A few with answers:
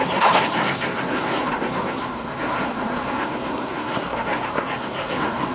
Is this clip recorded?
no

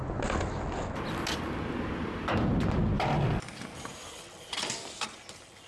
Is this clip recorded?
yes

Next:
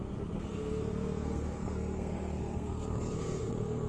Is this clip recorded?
no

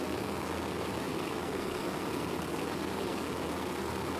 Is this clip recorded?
no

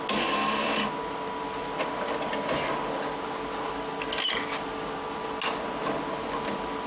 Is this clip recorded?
yes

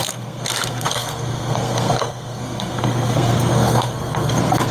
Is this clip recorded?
no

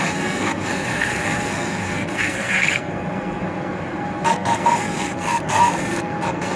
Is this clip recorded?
no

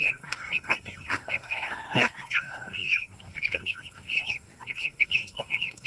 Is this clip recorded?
no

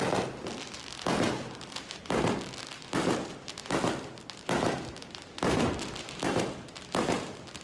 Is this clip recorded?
yes